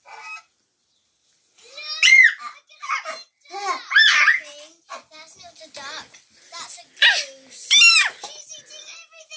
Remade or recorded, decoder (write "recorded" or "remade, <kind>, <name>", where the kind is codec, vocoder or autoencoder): recorded